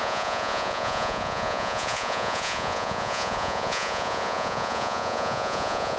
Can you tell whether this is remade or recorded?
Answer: remade